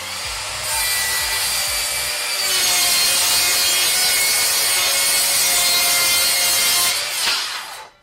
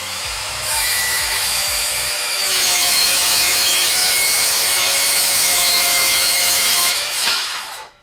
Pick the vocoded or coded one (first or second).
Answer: second